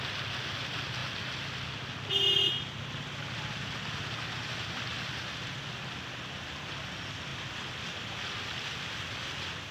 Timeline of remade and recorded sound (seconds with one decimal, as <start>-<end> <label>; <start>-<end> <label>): 0.0-9.7 recorded